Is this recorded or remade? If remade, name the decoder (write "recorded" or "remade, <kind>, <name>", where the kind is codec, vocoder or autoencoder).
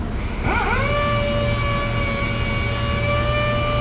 recorded